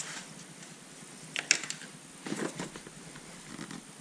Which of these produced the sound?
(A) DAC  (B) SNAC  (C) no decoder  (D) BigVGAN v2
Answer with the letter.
C